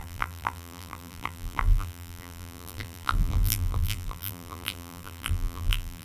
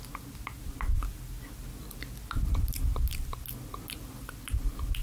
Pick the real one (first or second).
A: second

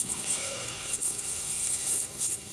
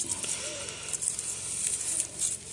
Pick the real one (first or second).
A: second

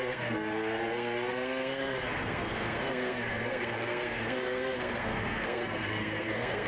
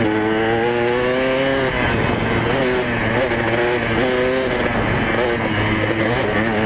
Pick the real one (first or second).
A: second